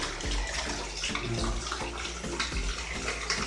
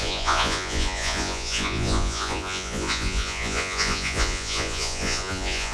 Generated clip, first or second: second